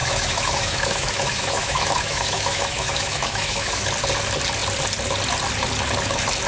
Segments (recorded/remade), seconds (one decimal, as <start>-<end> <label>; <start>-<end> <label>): 0.0-3.9 remade; 3.9-6.5 recorded